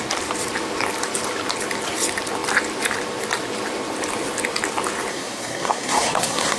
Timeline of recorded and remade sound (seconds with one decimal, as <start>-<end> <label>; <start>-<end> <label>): 0.0-5.1 recorded; 5.1-6.6 remade